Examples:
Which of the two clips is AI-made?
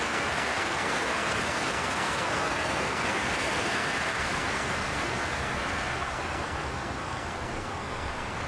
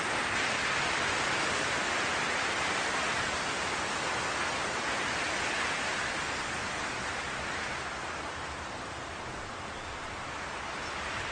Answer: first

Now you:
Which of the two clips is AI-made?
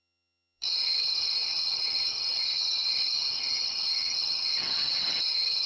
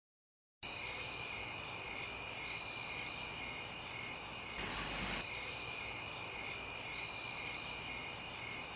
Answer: first